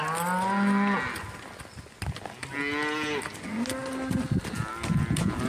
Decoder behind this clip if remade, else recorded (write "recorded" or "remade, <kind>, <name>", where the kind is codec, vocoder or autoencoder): recorded